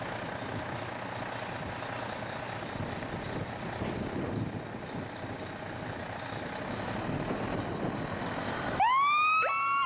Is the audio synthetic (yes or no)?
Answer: no